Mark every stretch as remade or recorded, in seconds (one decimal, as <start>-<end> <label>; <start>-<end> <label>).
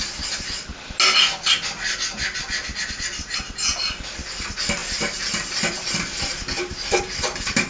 0.0-7.7 recorded